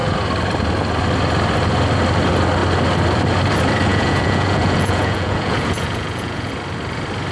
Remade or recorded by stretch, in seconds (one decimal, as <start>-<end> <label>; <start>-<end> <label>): 0.0-3.9 recorded; 3.9-6.5 remade; 6.5-7.3 recorded